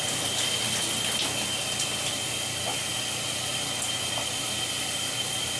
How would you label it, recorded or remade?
recorded